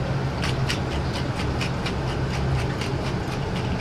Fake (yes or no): no